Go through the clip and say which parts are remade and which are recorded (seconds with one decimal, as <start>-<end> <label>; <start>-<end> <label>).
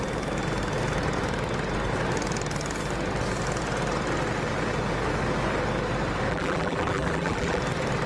0.0-6.3 recorded; 6.3-7.6 remade; 7.6-8.1 recorded